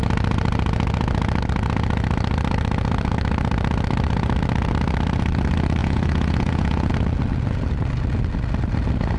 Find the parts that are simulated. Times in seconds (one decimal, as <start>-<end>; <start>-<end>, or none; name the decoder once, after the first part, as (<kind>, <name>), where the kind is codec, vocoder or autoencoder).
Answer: 5.8-6.9 (vocoder, Vocos)